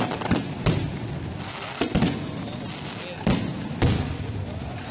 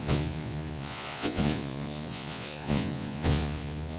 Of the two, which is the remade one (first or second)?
second